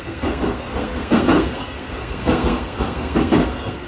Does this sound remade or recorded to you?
remade